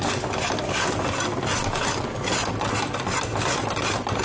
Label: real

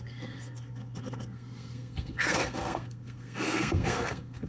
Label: fake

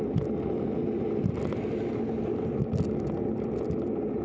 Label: real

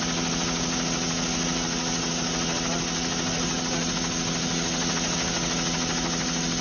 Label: real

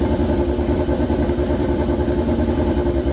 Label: fake